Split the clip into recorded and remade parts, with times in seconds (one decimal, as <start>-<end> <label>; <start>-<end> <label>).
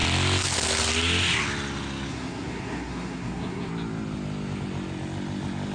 0.0-2.1 recorded; 2.1-3.7 remade; 3.7-5.7 recorded